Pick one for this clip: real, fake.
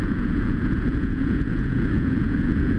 fake